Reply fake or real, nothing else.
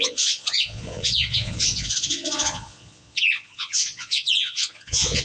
fake